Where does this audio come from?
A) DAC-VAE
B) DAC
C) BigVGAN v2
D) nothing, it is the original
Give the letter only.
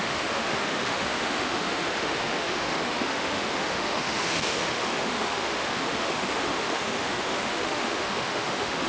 A